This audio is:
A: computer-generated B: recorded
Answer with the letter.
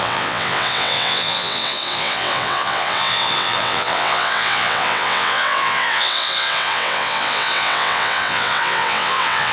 A